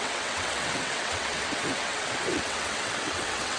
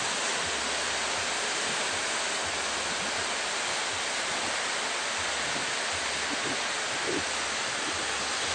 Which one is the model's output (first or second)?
first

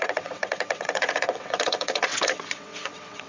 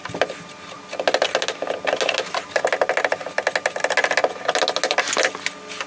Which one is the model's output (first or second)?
first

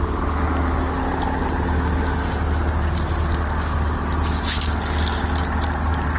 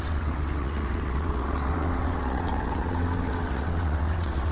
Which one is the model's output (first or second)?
second